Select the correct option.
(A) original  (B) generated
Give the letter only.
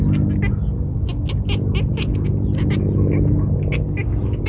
A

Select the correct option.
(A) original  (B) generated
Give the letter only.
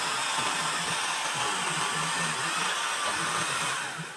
A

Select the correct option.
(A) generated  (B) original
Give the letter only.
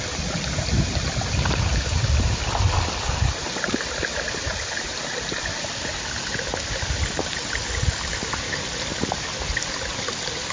B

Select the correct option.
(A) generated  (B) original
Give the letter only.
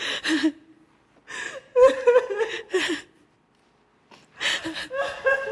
B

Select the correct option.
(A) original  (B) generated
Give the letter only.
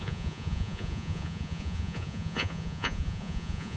B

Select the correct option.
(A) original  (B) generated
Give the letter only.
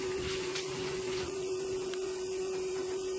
B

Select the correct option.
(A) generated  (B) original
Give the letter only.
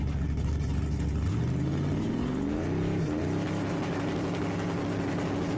B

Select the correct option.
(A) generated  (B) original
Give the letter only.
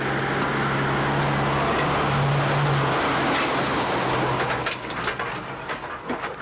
B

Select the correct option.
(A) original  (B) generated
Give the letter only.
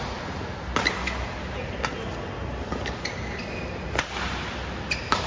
A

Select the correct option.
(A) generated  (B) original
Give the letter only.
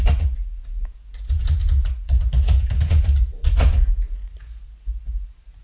A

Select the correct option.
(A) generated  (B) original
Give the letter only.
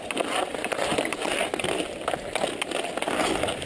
B